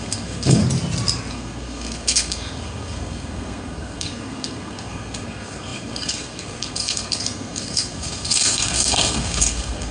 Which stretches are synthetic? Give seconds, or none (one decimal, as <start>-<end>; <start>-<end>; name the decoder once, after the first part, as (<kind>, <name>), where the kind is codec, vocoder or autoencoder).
0.0-0.6 (codec, SNAC); 1.3-9.9